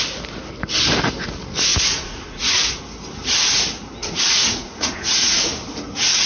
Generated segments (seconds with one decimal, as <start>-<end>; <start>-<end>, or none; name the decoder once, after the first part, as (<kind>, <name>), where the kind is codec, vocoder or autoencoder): 1.7-2.8 (vocoder, Vocos); 4.0-5.5